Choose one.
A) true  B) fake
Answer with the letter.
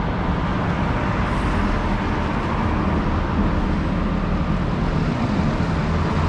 A